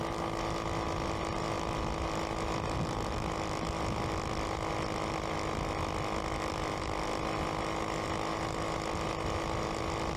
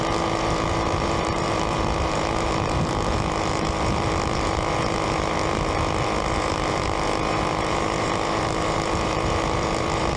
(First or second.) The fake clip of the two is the second